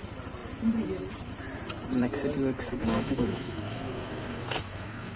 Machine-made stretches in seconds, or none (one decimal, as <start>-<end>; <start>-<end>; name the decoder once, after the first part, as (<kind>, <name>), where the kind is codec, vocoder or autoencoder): 2.7-5.2 (codec, SNAC)